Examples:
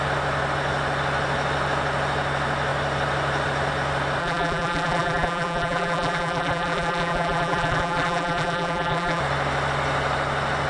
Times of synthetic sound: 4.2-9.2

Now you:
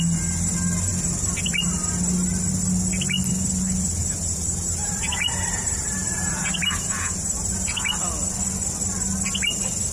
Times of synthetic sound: 4.0-7.9

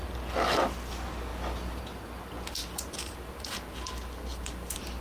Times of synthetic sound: 1.3-1.8; 2.6-5.0

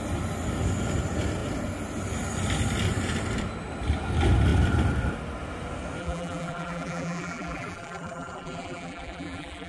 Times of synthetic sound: 6.0-9.7

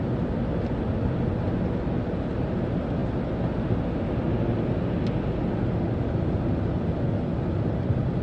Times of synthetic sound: 3.0-3.5

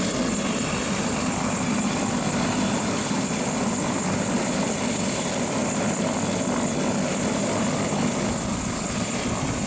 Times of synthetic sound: none

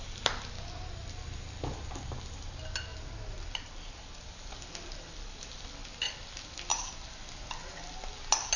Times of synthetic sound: none

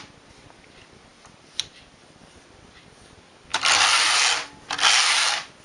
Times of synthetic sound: 1.1-2.2